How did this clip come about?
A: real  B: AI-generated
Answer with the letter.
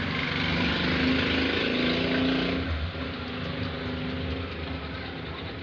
A